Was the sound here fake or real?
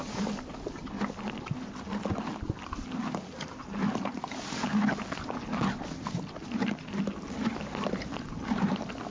real